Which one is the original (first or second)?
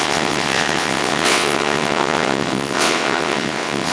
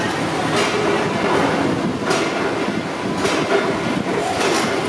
second